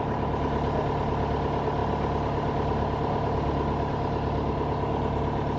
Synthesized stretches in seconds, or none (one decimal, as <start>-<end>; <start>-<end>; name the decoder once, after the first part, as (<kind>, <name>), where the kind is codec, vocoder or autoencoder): none